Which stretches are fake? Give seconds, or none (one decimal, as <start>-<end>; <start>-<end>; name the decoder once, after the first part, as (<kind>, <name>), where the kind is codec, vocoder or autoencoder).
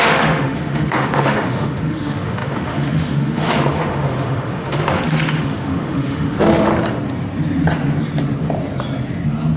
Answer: 0.0-6.7 (autoencoder, DAC-VAE)